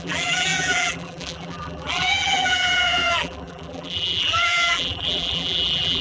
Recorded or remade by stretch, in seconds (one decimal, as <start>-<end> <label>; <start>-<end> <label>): 0.0-6.0 remade

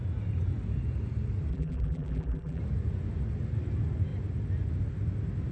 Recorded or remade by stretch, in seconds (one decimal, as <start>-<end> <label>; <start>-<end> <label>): 0.0-1.5 recorded; 1.5-2.6 remade; 2.6-5.5 recorded

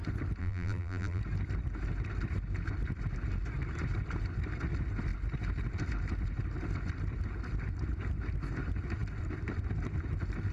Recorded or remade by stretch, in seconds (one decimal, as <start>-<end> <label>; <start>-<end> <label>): 0.0-0.4 recorded; 0.4-1.2 remade; 1.2-10.5 recorded

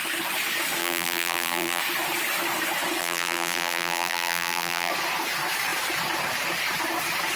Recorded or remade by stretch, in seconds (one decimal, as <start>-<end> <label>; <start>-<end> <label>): 0.0-0.8 recorded; 0.8-1.8 remade; 1.8-3.0 recorded; 3.0-4.9 remade; 4.9-7.4 recorded

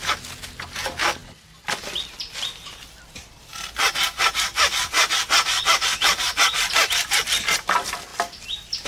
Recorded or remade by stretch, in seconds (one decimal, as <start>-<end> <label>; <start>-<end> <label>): 0.0-8.1 recorded; 8.1-8.9 remade

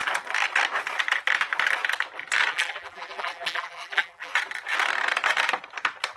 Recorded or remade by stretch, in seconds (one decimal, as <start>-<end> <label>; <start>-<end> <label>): 0.0-2.5 recorded; 2.5-4.3 remade; 4.3-6.2 recorded

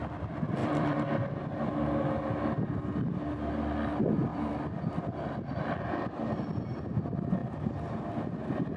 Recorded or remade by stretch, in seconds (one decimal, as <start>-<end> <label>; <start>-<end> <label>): 0.0-0.6 recorded; 0.6-1.1 remade; 1.1-4.3 recorded; 4.3-6.4 remade; 6.4-8.8 recorded